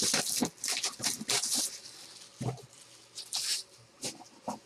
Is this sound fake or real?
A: real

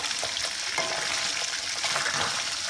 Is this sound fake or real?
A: real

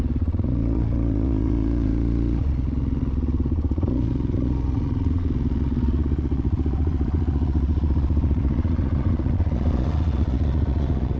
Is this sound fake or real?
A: fake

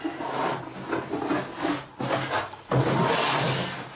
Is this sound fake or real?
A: real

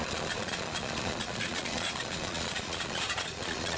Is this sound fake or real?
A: fake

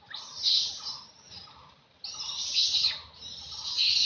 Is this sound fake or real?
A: real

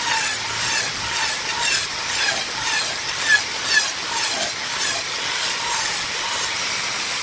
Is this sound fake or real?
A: real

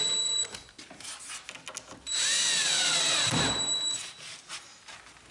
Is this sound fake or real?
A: real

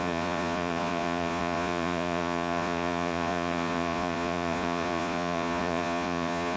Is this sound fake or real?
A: fake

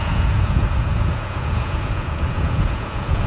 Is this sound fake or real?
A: fake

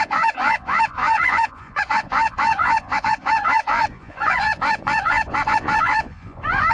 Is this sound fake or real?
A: fake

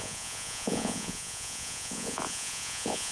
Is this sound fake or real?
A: fake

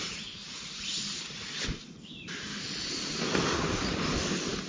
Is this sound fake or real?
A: real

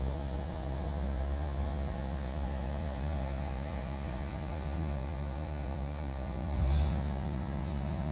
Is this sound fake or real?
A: fake